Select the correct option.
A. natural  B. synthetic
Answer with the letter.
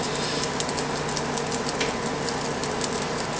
A